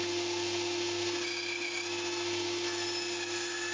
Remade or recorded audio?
recorded